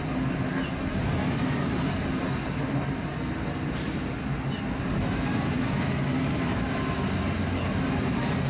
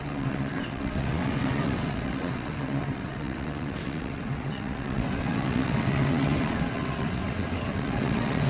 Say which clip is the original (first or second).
first